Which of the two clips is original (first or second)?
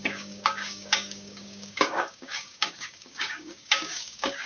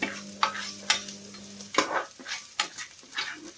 second